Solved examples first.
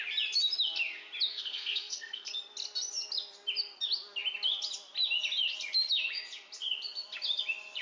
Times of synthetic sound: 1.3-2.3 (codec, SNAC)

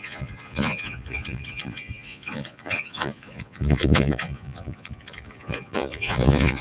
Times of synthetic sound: 0.0-6.6 (vocoder, Vocos)

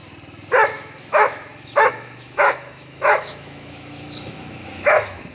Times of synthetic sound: 0.7-5.3 (autoencoder, DAC-VAE)

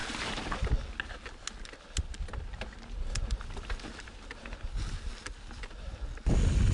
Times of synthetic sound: none

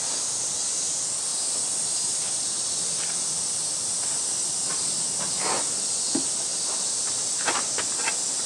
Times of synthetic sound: none